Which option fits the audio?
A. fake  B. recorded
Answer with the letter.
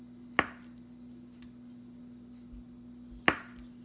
B